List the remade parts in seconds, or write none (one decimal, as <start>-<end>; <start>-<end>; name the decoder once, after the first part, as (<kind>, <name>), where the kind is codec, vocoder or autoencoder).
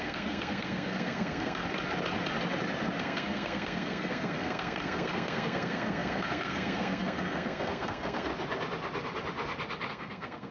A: 0.0-1.6 (codec, SNAC); 3.0-8.3; 9.9-10.5